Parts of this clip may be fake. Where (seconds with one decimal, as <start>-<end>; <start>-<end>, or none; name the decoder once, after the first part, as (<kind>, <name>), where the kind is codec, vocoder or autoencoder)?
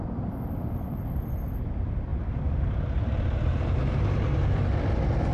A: 2.1-4.6 (vocoder, BigVGAN v2)